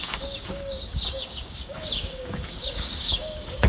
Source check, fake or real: fake